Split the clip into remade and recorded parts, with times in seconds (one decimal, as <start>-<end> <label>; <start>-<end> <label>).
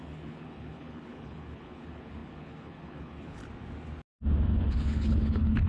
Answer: 0.0-3.4 remade; 3.4-4.6 recorded; 4.6-5.7 remade